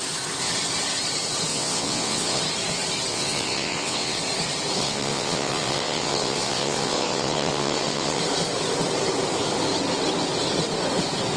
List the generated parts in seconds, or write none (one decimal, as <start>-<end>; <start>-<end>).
1.5-2.4; 3.1-4.2; 4.8-8.2